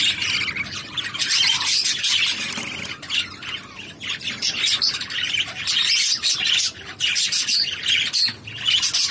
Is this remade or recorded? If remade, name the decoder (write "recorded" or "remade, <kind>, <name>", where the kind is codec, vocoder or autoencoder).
recorded